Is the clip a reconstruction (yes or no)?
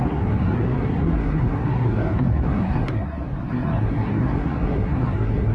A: yes